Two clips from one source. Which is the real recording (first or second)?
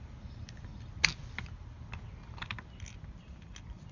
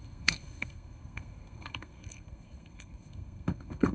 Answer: first